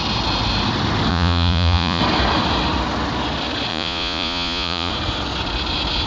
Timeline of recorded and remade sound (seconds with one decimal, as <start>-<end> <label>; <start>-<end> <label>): 0.0-1.1 recorded; 1.1-2.0 remade; 2.0-3.7 recorded; 3.7-4.9 remade; 4.9-6.1 recorded

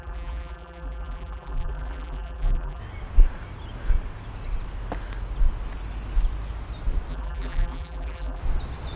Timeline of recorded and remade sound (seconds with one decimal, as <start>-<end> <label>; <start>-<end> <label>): 0.0-2.8 remade; 2.8-7.1 recorded; 7.1-8.4 remade; 8.4-9.0 recorded

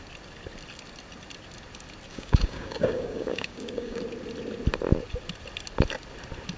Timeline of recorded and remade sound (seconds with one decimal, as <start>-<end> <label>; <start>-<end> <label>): 0.0-2.1 recorded; 2.1-4.0 remade; 4.0-6.6 recorded